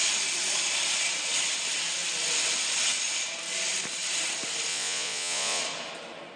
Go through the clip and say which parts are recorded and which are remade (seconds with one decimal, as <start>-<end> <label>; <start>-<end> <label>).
0.0-4.7 recorded; 4.7-5.6 remade; 5.6-6.4 recorded